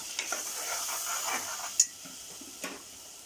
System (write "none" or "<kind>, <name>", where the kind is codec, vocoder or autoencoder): none